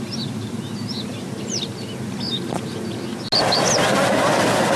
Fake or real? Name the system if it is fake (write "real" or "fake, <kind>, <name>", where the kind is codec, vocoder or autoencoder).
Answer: real